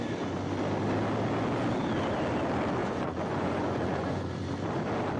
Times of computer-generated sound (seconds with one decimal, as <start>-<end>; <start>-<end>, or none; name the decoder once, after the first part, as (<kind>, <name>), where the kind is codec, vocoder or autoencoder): 2.8-4.3 (vocoder, Vocos)